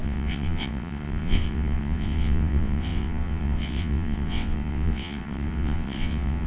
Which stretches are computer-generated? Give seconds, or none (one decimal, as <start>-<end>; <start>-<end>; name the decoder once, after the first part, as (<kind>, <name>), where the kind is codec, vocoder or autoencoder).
0.0-6.5 (vocoder, WaveNeXt)